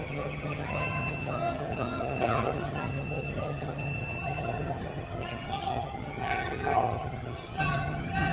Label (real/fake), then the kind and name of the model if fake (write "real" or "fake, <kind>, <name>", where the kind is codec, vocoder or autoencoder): fake, vocoder, HiFi-GAN